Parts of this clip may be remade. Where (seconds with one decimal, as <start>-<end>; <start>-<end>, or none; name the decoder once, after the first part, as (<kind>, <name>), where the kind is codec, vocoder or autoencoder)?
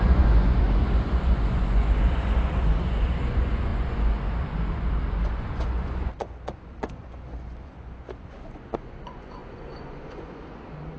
0.0-11.0 (vocoder, Vocos)